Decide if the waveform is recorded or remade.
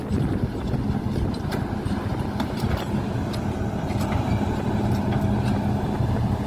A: recorded